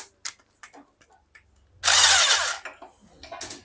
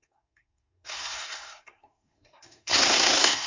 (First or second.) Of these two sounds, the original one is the first